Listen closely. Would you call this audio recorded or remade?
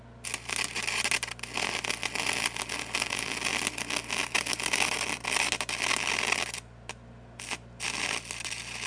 recorded